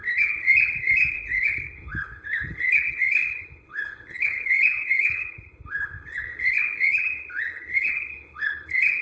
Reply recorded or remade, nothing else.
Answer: remade